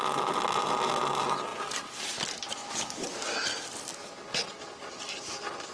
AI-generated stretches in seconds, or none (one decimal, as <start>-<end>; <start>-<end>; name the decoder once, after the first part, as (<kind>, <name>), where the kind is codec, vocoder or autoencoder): none